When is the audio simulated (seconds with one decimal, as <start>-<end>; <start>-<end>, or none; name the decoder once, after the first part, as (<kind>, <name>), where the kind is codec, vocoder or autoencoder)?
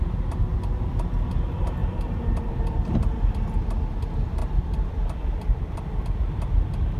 1.8-2.5 (vocoder, BigVGAN v2); 4.4-5.8